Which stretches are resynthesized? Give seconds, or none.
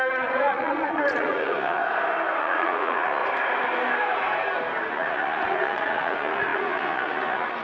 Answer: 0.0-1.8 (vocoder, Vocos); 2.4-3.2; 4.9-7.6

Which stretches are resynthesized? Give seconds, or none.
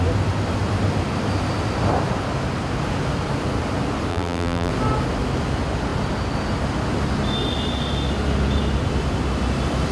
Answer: 4.1-4.7 (vocoder, BigVGAN v2)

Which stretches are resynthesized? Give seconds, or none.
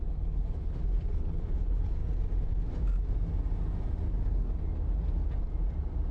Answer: 0.0-2.0 (codec, HILCodec)